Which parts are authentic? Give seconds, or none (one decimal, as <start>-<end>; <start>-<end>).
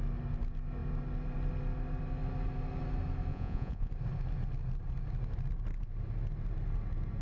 0.0-3.3; 3.9-7.2